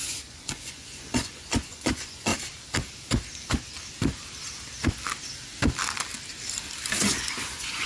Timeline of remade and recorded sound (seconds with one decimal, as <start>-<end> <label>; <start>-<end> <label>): 0.0-2.3 remade; 2.3-7.0 recorded; 7.0-7.9 remade